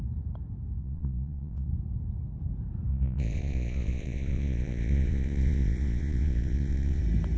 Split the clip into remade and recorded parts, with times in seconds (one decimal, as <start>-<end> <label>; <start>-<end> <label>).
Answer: 0.0-0.8 recorded; 0.8-1.7 remade; 1.7-2.9 recorded; 2.9-7.0 remade; 7.0-7.4 recorded